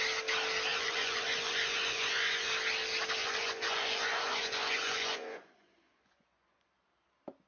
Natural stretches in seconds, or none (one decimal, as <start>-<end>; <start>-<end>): 0.0-0.7; 2.5-3.2; 6.7-7.5